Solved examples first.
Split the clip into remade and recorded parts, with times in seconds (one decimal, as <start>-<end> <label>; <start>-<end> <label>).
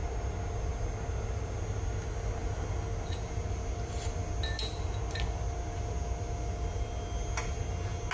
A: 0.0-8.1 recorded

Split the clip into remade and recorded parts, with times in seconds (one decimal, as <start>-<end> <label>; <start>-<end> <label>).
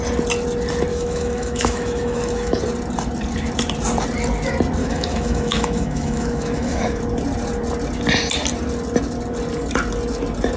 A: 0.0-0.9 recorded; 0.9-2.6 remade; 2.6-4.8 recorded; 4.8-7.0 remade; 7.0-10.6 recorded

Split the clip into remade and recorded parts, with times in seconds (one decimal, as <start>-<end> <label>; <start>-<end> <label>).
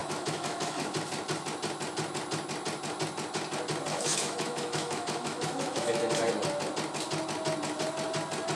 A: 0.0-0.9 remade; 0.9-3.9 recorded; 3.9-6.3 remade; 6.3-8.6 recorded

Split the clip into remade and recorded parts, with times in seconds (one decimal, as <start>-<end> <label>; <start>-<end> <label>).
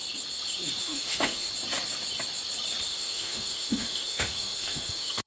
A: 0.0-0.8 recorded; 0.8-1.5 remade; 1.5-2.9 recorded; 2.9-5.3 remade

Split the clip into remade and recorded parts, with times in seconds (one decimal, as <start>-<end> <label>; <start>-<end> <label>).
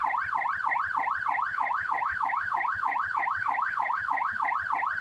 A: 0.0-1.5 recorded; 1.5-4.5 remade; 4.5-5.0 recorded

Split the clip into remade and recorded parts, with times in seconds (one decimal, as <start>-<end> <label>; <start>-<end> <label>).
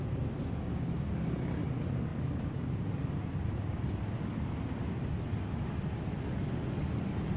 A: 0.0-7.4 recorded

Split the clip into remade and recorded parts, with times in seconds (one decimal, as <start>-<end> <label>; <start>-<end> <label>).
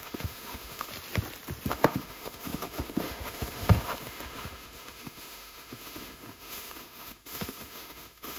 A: 0.0-0.9 remade; 0.9-1.7 recorded; 1.7-8.4 remade